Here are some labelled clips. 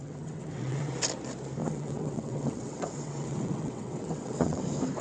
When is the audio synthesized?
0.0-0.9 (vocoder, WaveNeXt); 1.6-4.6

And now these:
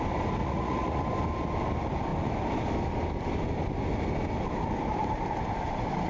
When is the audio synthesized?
0.4-1.0 (vocoder, Vocos)

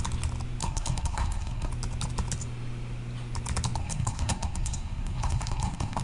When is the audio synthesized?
0.6-1.7 (codec, SNAC); 3.8-6.0

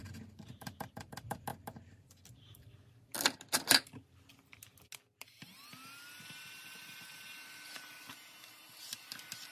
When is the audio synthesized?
none

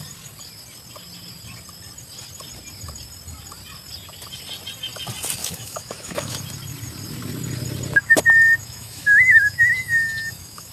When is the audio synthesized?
5.4-6.4 (autoencoder, DAC-VAE); 8.6-10.7

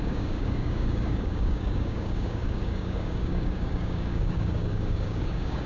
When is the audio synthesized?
0.0-5.7 (codec, DAC)

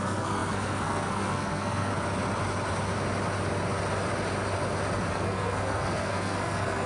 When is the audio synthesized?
0.0-1.9 (codec, SNAC); 5.1-6.9

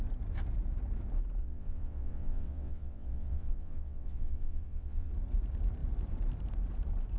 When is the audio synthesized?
1.4-5.1 (vocoder, WaveNeXt)